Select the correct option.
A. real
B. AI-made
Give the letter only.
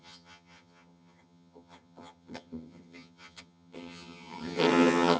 B